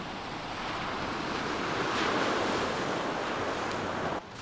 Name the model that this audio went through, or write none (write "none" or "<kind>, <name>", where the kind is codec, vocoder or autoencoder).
vocoder, BigVGAN v2